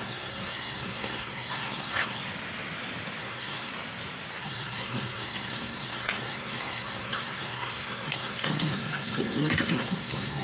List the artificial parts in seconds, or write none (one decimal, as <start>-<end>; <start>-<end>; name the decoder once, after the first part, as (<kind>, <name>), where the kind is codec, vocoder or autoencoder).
0.0-2.2 (codec, SNAC); 3.2-3.7; 4.4-10.4